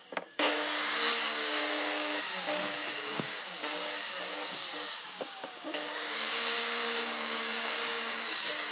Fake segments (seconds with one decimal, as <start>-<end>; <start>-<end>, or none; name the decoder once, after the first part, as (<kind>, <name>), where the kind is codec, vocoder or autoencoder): 0.0-8.7 (codec, DAC)